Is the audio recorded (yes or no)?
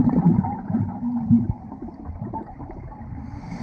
no